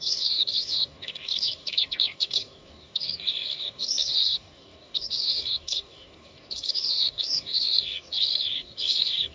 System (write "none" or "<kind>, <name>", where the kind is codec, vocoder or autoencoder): codec, DAC